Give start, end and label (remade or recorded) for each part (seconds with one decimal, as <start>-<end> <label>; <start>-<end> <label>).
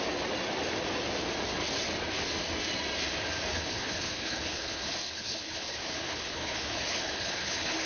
0.0-3.5 recorded; 3.5-7.9 remade